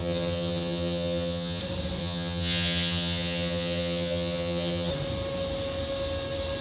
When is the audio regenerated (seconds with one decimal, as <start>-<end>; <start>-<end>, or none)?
0.0-1.6; 2.0-4.9